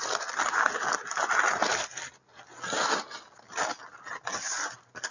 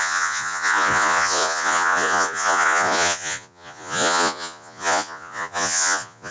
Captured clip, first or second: first